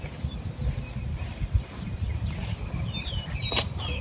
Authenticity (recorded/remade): recorded